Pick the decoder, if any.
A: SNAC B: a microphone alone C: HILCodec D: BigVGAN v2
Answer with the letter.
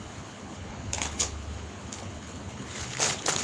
C